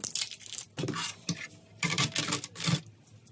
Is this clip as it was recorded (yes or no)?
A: yes